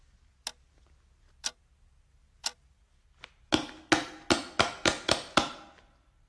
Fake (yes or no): no